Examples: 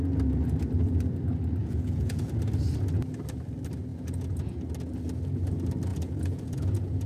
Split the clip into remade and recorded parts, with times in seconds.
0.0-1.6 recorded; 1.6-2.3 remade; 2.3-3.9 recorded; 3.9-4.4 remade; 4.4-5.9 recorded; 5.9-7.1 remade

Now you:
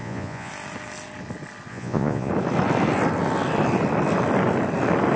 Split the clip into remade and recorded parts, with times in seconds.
0.0-0.5 remade; 0.5-1.7 recorded; 1.7-2.3 remade; 2.3-5.2 recorded

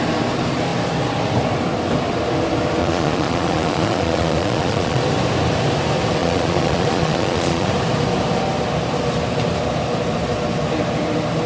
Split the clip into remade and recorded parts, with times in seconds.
0.0-2.8 recorded; 2.8-5.0 remade; 5.0-6.2 recorded; 6.2-7.7 remade; 7.7-11.5 recorded

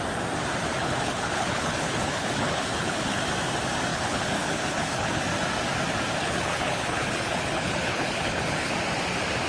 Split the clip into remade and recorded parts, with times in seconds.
0.0-0.7 recorded; 0.7-3.2 remade; 3.2-3.9 recorded; 3.9-5.2 remade; 5.2-6.2 recorded; 6.2-8.7 remade; 8.7-9.5 recorded